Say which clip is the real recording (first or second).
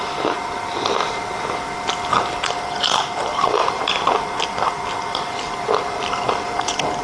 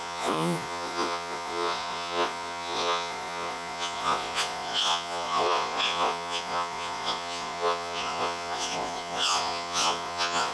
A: first